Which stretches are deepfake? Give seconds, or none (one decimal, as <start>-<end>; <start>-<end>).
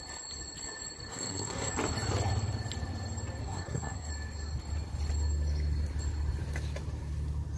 1.1-1.7; 3.4-4.1